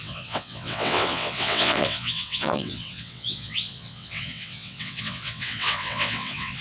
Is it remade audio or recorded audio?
remade